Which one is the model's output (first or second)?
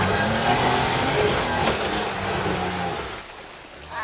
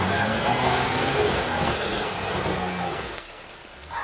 second